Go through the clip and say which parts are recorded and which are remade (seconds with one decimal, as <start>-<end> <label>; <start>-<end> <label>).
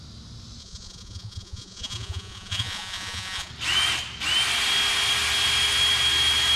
0.0-0.6 recorded; 0.6-3.5 remade; 3.5-6.6 recorded